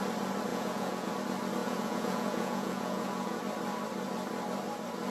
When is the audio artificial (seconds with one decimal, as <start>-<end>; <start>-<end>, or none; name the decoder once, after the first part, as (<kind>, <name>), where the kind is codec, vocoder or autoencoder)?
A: 0.5-1.1 (vocoder, Vocos); 1.6-3.4